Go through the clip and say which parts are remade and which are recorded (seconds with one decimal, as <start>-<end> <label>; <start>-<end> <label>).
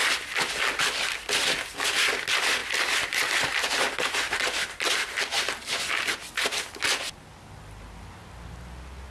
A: 0.0-1.4 remade; 1.4-2.6 recorded; 2.6-6.1 remade; 6.1-9.1 recorded